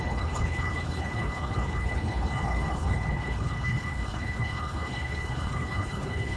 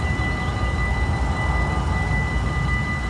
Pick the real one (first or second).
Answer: second